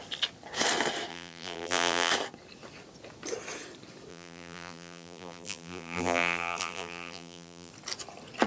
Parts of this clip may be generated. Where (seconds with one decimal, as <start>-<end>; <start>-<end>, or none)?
1.1-2.1; 4.1-7.7